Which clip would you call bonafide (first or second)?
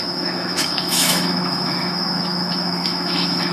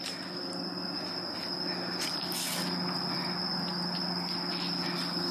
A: second